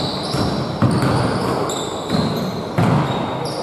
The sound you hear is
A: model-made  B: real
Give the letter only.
B